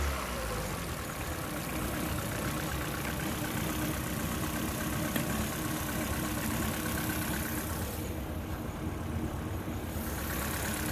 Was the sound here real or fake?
real